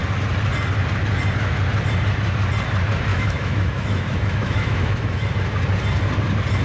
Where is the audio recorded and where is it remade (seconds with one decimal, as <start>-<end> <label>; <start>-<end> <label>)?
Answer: 0.0-3.1 recorded; 3.1-5.3 remade; 5.3-6.6 recorded